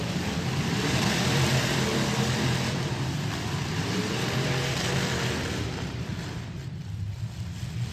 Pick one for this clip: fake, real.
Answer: fake